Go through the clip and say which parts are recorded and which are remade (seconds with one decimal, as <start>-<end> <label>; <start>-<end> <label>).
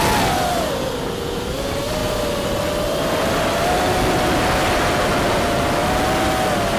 0.0-6.8 recorded